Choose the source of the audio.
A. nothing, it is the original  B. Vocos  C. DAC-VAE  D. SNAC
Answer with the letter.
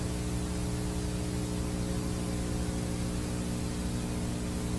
A